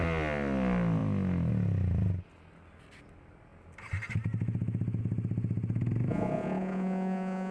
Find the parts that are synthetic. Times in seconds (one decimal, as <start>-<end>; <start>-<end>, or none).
6.1-7.5